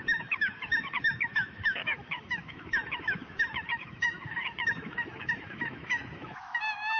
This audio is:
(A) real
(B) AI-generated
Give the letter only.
B